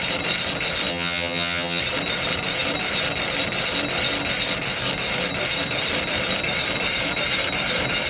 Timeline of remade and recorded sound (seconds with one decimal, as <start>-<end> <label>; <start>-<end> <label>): 0.0-0.9 recorded; 0.9-1.8 remade; 1.8-8.1 recorded